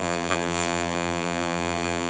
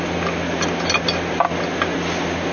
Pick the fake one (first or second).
first